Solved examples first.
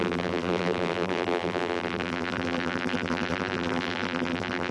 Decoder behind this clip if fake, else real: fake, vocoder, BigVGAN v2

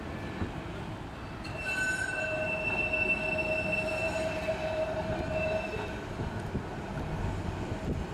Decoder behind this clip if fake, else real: real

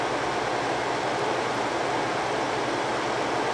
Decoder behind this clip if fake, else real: real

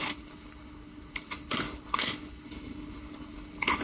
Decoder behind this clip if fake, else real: fake, codec, HILCodec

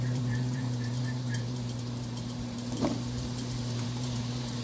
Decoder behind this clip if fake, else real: fake, vocoder, BigVGAN v2